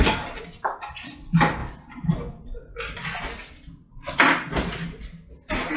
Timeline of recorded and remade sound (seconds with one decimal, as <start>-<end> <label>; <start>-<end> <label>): 0.0-5.8 recorded